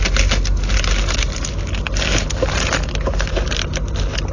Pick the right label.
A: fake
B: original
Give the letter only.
B